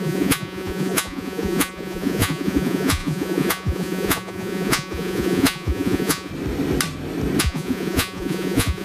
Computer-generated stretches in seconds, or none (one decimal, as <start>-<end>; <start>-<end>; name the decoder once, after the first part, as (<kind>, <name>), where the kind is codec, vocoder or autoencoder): 0.0-6.3 (vocoder, Vocos); 7.4-8.8